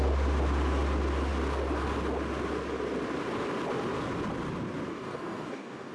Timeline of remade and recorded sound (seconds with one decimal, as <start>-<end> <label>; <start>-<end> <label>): 0.0-4.9 recorded; 4.9-5.9 remade